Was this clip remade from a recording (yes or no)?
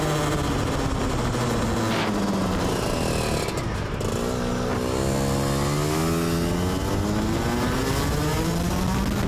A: no